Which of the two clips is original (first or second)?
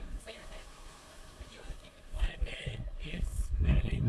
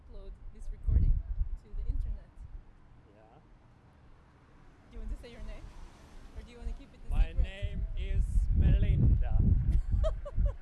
second